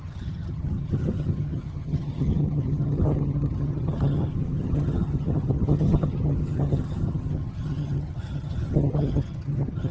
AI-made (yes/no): yes